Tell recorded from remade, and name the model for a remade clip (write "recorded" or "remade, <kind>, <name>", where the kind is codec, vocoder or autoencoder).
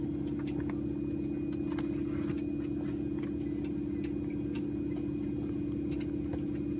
recorded